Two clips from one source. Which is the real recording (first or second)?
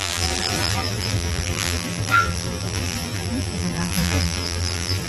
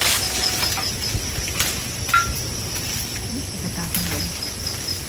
second